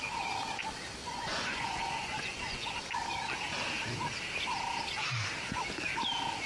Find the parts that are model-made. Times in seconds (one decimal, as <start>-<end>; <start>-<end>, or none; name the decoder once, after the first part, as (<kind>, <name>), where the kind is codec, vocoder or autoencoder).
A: 1.0-2.7 (vocoder, Vocos)